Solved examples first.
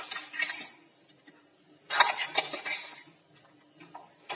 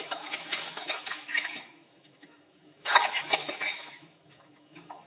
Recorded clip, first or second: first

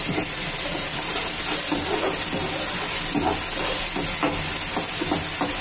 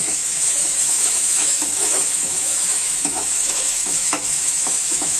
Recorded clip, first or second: first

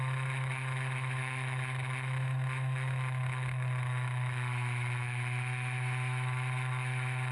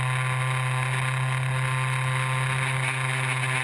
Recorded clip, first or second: second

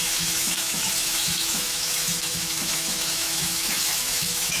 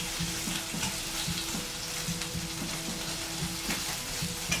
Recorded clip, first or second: second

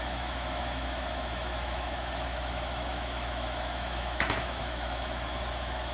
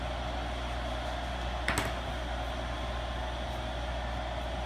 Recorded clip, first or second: second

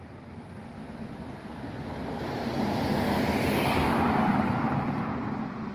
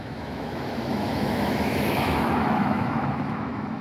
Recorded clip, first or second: first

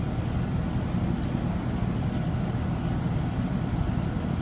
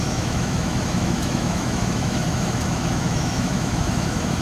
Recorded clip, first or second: first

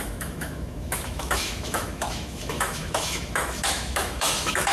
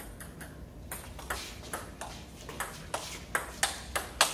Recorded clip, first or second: second